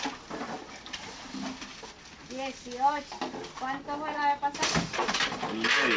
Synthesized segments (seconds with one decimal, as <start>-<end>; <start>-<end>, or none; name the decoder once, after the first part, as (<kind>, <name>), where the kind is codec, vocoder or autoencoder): none

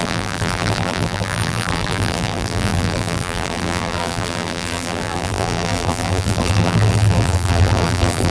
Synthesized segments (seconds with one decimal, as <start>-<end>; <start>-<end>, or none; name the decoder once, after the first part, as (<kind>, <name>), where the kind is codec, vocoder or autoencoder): 0.0-8.3 (vocoder, BigVGAN v2)